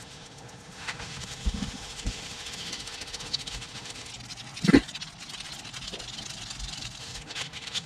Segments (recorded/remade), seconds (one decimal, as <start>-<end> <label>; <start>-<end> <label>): 0.0-4.1 remade; 4.1-7.0 recorded; 7.0-7.9 remade